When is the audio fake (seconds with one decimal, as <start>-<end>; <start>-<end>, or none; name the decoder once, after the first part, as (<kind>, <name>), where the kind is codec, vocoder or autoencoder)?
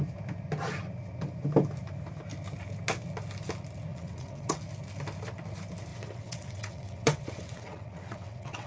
3.9-4.6 (vocoder, WaveNeXt); 5.9-8.7